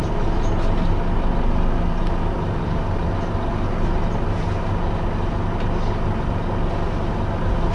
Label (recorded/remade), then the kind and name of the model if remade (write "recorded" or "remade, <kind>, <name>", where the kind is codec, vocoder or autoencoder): recorded